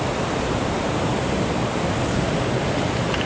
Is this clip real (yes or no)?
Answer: yes